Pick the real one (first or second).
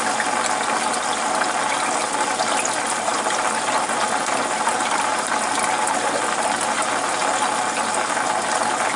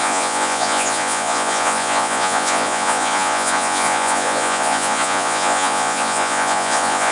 first